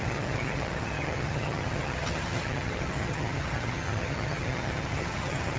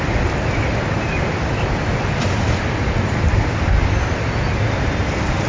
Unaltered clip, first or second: second